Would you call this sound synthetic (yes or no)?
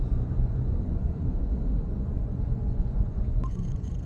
yes